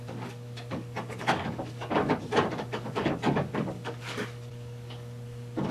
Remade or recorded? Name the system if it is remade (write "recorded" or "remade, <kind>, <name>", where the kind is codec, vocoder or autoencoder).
remade, codec, DAC